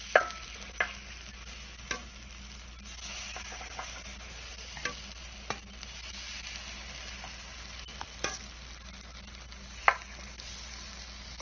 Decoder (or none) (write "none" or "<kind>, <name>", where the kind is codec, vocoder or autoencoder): none